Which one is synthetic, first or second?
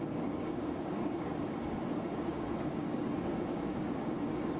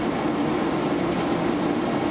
first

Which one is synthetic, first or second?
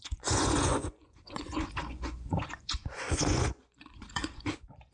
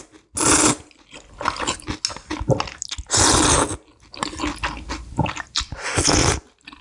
first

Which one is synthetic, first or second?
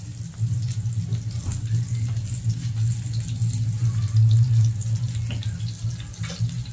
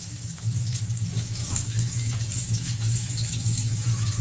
second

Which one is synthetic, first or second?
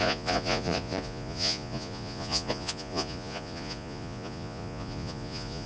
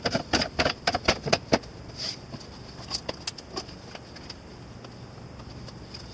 first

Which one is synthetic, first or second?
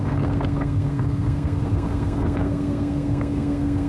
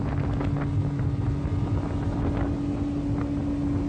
first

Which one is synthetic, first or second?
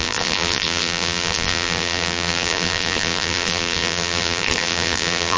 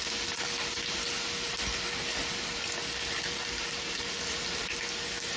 first